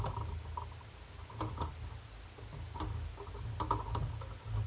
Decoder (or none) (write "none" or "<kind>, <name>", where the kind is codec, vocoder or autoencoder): none